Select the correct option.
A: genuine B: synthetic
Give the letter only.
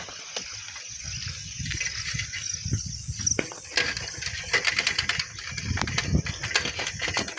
A